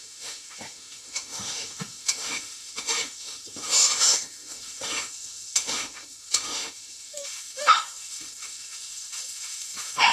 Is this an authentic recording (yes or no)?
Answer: no